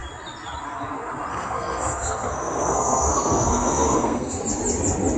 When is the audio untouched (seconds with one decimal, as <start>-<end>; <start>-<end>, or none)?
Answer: 0.0-1.3; 4.4-5.2